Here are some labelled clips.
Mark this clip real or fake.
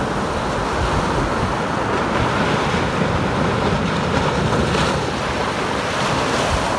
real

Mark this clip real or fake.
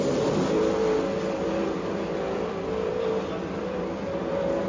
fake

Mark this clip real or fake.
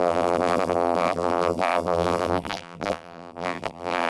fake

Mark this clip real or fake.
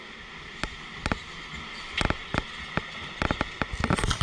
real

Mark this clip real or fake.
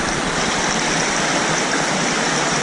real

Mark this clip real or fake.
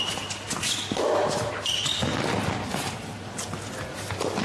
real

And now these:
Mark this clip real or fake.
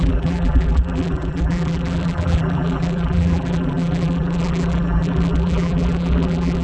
fake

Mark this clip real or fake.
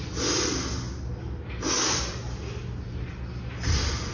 real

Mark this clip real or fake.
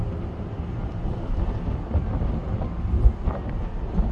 real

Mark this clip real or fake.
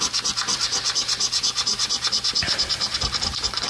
real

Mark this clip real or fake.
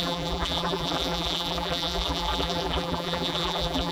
fake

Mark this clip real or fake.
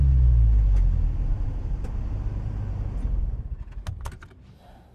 real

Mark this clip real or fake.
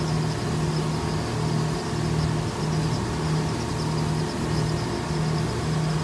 real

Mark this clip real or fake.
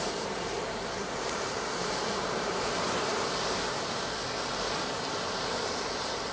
fake